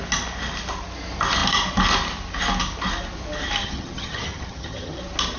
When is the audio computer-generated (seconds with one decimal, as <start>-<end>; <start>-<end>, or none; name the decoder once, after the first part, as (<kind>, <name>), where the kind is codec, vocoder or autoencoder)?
3.6-5.0 (vocoder, HiFi-GAN)